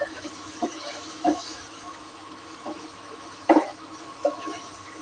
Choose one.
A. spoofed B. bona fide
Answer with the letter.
A